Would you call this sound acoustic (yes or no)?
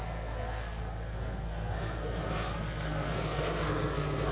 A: no